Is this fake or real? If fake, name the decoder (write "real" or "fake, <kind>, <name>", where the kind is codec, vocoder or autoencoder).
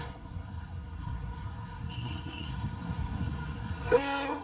fake, codec, SNAC